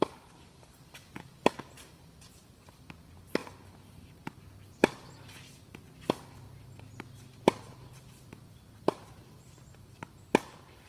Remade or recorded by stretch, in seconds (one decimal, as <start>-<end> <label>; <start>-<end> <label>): 0.0-10.9 recorded